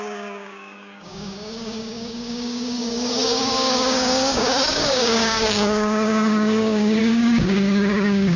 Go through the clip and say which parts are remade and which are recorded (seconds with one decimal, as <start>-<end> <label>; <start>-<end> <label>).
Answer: 0.0-8.4 remade